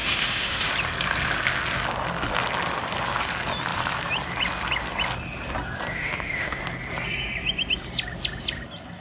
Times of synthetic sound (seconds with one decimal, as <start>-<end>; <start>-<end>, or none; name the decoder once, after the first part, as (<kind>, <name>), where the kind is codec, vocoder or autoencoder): 0.0-0.7 (autoencoder, DAC-VAE); 5.9-6.6